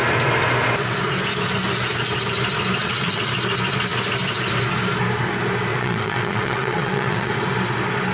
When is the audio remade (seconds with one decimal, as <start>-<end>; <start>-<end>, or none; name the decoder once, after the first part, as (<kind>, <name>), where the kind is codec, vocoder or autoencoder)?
2.8-3.3 (vocoder, WaveNeXt); 5.7-7.3

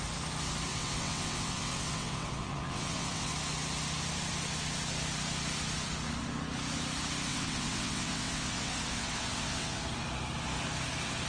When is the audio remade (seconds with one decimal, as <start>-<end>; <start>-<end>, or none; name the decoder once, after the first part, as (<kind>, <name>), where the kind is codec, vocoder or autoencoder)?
0.7-3.3 (vocoder, WaveNeXt); 7.3-9.8